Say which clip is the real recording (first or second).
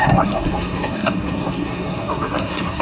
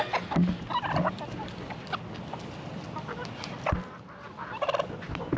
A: second